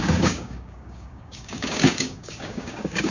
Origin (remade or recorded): remade